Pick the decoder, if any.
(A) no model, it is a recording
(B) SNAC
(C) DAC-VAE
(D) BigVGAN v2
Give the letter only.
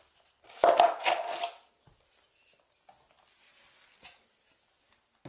A